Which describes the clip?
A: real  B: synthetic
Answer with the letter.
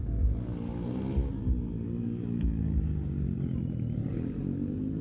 A